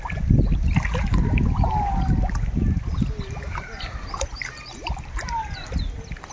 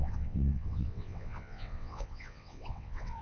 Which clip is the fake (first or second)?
second